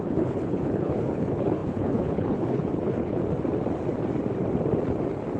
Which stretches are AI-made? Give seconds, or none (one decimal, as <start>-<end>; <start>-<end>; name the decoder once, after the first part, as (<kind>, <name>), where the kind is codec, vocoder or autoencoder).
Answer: 0.0-3.2 (codec, HILCodec)